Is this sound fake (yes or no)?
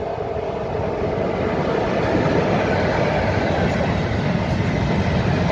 no